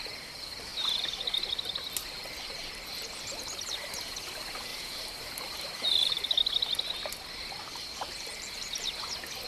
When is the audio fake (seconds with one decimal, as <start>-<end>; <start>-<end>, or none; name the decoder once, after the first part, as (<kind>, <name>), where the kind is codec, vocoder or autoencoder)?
4.7-6.1 (vocoder, BigVGAN v2); 7.7-8.6